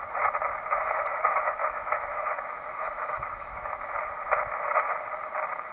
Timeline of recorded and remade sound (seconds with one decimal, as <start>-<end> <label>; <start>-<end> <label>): 0.0-1.1 recorded; 1.1-3.7 remade; 3.7-5.7 recorded